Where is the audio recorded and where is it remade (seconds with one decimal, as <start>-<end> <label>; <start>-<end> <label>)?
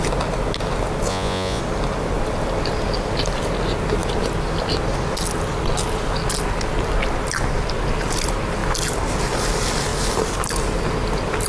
0.0-1.1 recorded; 1.1-1.6 remade; 1.6-11.5 recorded